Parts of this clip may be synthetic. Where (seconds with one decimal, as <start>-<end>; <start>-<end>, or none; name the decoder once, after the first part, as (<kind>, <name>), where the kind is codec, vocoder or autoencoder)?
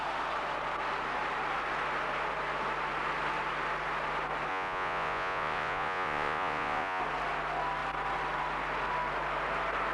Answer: 4.5-7.0 (vocoder, Vocos)